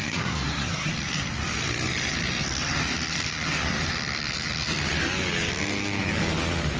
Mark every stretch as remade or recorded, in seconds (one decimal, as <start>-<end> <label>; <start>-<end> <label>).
0.0-0.9 remade; 0.9-6.8 recorded